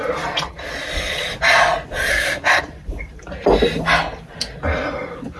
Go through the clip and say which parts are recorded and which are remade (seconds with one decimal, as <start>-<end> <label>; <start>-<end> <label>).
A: 0.0-2.1 recorded; 2.1-2.6 remade; 2.6-5.4 recorded

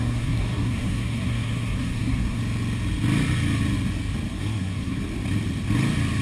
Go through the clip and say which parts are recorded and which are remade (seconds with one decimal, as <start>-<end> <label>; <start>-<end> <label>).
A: 0.0-2.4 remade; 2.4-4.3 recorded; 4.3-5.0 remade; 5.0-6.2 recorded